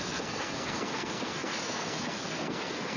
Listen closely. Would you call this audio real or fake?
fake